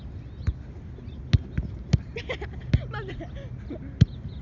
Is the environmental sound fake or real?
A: real